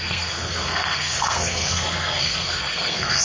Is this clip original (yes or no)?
no